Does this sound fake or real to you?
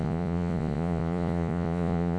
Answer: fake